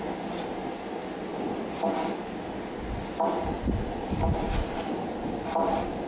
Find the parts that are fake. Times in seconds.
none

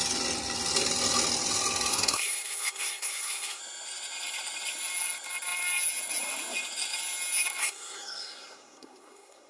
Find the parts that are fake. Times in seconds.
1.9-3.6 (codec, SNAC); 7.6-9.5

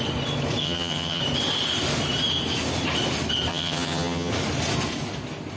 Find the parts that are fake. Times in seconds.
0.6-1.2 (vocoder, HiFi-GAN); 3.5-4.3

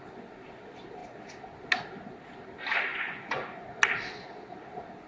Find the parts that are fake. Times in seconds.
2.9-3.8 (vocoder, Vocos)

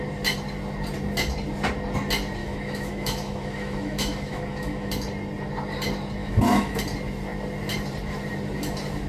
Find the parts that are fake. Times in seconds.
2.4-4.9 (autoencoder, DAC-VAE); 6.2-6.8

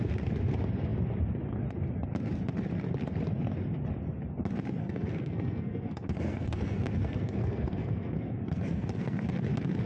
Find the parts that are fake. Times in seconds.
4.8-9.3 (codec, SNAC)

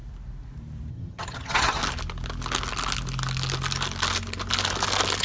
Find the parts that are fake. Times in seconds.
0.9-1.8 (vocoder, HiFi-GAN)

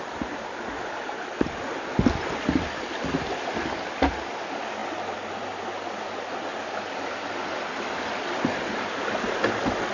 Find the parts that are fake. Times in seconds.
none